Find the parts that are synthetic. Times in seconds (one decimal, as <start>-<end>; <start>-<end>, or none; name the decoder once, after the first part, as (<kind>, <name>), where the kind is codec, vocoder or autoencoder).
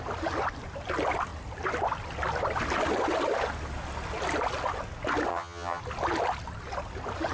5.3-5.8 (vocoder, HiFi-GAN)